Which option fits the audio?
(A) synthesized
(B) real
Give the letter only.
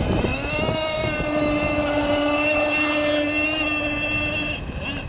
B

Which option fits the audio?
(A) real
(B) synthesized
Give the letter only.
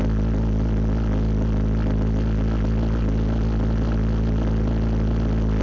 A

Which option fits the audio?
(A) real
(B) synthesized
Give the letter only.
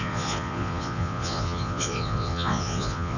B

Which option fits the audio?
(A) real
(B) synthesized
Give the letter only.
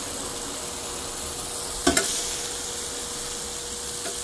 A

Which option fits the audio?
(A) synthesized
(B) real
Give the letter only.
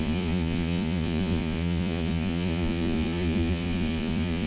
A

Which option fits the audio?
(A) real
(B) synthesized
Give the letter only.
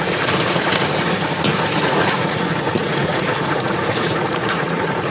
B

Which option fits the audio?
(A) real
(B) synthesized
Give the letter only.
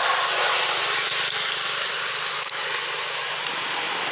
A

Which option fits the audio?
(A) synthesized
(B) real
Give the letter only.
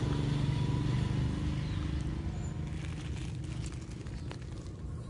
B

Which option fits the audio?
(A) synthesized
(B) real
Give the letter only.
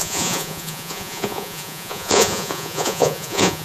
A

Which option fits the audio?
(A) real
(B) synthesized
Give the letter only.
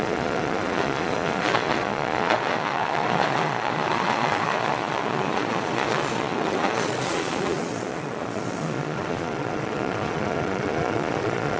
B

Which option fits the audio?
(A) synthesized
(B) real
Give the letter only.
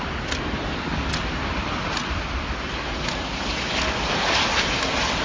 B